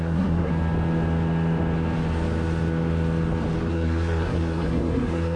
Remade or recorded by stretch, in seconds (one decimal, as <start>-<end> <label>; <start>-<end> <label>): 0.0-0.5 remade; 0.5-3.7 recorded; 3.7-5.4 remade